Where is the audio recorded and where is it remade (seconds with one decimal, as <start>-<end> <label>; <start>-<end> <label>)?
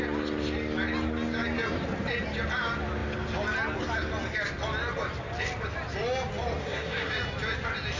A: 0.0-6.6 recorded; 6.6-7.1 remade; 7.1-8.0 recorded